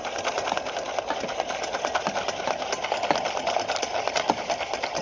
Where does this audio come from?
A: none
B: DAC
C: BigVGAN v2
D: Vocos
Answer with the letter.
A